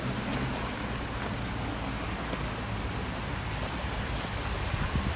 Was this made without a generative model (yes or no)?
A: yes